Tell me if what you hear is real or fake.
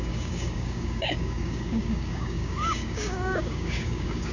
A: fake